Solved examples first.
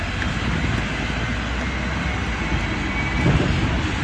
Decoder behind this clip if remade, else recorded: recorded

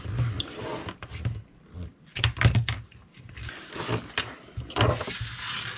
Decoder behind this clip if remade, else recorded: recorded